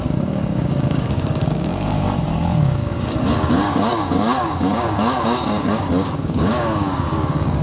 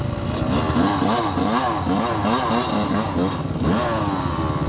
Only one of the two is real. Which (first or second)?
second